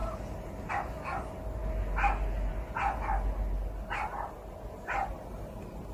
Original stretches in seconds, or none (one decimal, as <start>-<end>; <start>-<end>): 0.0-5.9